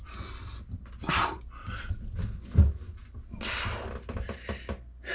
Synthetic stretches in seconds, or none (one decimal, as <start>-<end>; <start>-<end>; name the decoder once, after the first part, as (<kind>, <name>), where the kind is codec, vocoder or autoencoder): none